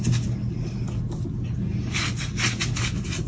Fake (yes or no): no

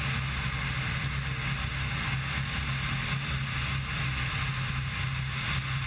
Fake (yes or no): no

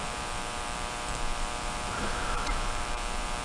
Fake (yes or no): yes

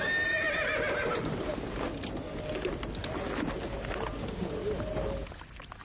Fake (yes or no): no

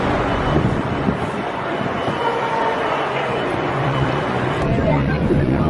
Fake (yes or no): yes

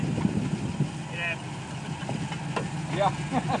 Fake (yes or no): no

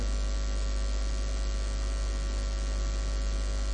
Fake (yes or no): no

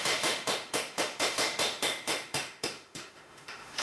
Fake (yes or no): yes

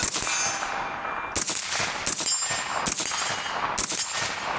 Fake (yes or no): no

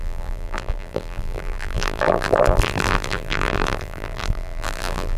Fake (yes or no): yes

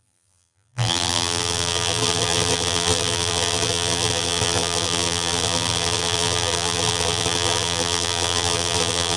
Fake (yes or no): yes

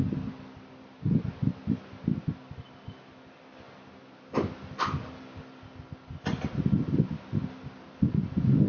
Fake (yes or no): no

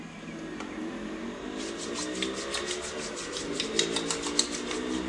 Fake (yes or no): no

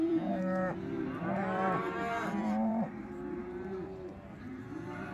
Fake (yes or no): yes